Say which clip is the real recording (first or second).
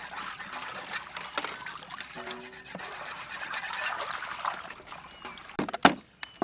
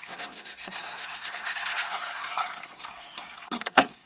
first